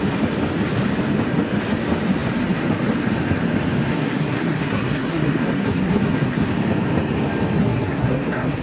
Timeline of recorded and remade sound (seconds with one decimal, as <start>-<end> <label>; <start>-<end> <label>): 0.0-3.9 recorded; 3.9-6.5 remade; 6.5-7.6 recorded; 7.6-8.6 remade